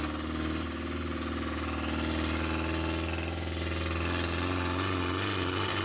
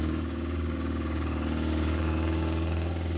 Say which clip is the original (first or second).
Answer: first